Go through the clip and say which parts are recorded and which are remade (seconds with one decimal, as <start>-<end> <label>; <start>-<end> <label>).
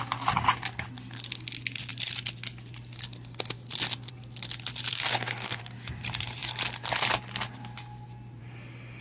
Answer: 0.0-4.9 recorded; 4.9-5.6 remade; 5.6-9.0 recorded